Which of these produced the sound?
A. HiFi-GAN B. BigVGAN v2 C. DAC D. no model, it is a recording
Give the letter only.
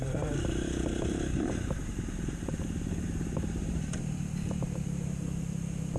B